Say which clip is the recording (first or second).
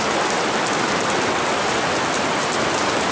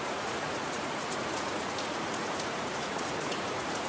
first